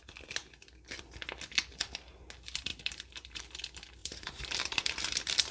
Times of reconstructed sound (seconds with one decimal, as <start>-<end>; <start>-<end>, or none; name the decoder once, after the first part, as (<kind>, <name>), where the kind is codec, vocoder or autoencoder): 2.7-3.4 (vocoder, BigVGAN v2); 4.0-5.5